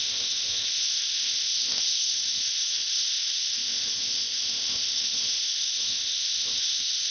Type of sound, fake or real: fake